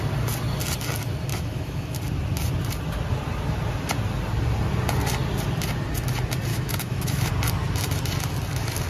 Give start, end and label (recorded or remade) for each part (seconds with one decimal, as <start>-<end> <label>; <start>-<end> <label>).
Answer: 0.0-1.3 recorded; 1.3-2.0 remade; 2.0-6.5 recorded; 6.5-7.3 remade; 7.3-8.9 recorded